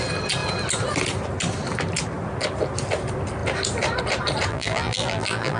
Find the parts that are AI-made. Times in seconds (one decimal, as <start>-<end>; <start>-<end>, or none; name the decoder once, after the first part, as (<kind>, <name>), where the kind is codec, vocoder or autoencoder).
4.5-5.6 (vocoder, BigVGAN v2)